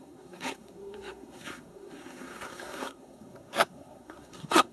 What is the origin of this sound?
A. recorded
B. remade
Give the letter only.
B